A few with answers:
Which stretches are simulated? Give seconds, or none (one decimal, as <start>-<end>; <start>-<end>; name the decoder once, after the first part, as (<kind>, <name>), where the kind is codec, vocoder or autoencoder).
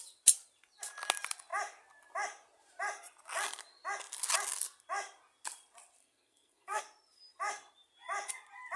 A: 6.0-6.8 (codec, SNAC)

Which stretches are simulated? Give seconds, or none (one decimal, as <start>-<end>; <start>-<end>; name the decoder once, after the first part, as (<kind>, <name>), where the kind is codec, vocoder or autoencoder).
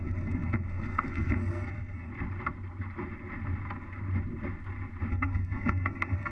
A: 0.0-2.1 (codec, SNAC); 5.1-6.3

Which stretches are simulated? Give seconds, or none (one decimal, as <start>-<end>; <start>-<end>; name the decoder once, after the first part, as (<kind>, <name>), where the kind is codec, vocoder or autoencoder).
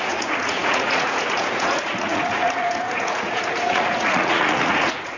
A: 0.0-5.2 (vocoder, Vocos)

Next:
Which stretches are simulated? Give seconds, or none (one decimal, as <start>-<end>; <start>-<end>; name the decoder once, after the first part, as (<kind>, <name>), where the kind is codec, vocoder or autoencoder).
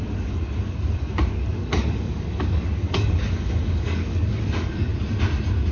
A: 0.0-4.9 (codec, DAC)